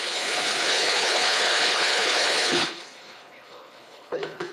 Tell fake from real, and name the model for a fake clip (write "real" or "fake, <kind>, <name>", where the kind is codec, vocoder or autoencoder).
fake, codec, HILCodec